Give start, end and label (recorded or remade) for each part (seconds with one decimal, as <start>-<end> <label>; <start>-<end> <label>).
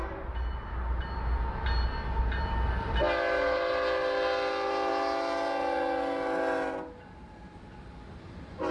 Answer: 0.0-8.7 recorded